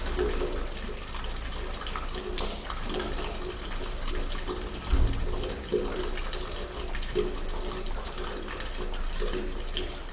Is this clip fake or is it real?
real